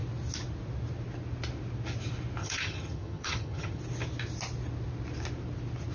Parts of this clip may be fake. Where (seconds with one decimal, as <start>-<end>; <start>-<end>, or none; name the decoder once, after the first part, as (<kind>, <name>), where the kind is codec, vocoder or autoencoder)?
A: 2.4-3.8 (vocoder, HiFi-GAN)